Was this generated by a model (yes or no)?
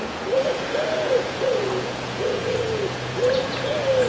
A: yes